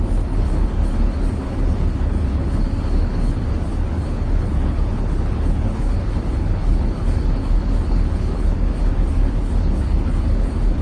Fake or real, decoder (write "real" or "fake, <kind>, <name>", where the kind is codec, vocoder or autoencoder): fake, codec, HILCodec